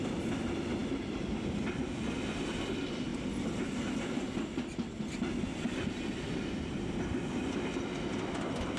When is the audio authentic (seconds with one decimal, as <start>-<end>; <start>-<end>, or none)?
0.0-8.8